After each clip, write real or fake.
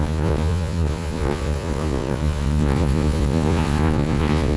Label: fake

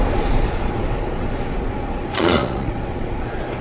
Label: fake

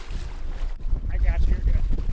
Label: real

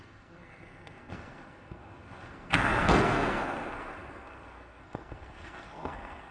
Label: fake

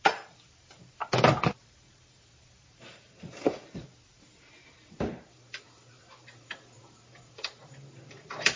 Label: fake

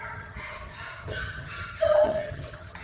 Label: fake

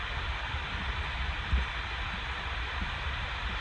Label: real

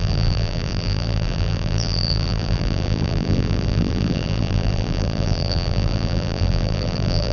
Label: fake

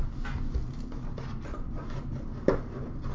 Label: real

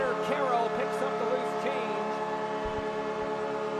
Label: real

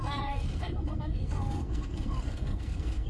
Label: fake